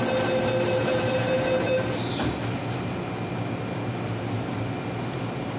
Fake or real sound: real